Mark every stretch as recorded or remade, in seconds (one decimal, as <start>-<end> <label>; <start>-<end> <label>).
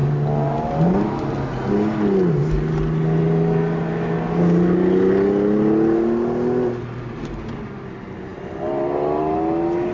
0.0-9.9 recorded